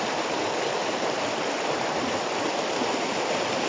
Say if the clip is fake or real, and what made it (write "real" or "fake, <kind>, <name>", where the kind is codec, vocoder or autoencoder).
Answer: fake, vocoder, BigVGAN v2